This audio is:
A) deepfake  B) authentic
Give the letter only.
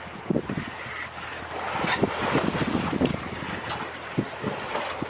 B